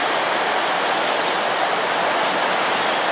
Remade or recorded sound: recorded